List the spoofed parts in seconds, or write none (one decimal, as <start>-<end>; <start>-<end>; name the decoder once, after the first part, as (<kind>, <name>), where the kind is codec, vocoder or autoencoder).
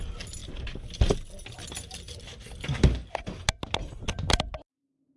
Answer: none